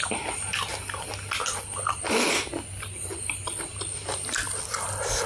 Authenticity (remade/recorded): recorded